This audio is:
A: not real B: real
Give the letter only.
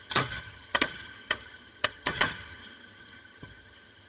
A